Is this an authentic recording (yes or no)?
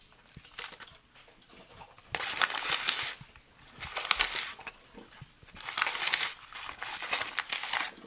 yes